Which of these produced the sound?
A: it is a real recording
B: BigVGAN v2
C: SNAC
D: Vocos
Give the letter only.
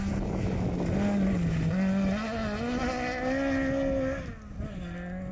A